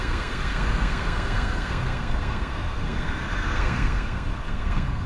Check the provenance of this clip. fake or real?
fake